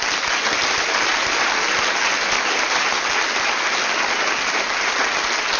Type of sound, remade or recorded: recorded